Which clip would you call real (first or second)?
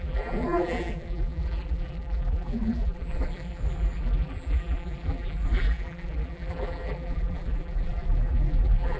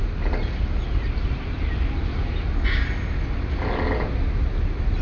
second